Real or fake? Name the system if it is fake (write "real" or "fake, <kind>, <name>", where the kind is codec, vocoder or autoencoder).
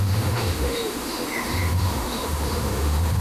fake, autoencoder, DAC-VAE